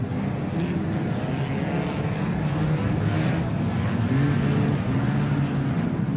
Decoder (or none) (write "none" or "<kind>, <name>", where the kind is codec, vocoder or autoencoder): none